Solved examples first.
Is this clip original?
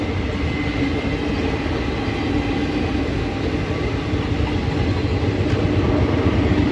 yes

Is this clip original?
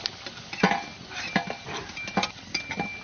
yes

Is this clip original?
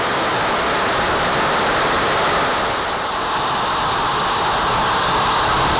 no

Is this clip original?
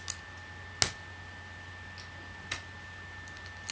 yes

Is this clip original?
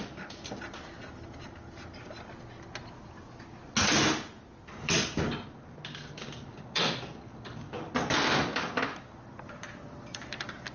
yes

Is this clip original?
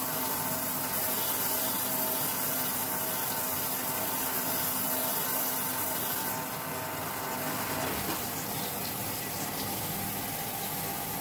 yes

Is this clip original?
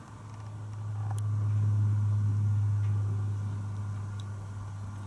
yes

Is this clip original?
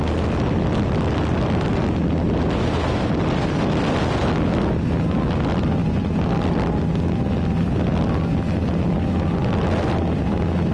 yes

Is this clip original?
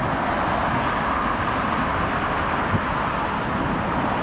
yes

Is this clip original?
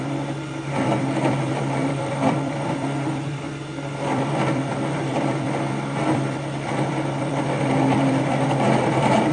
no